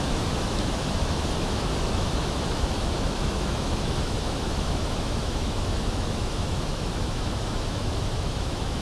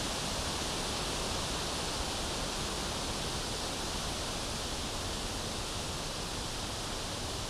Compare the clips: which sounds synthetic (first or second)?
first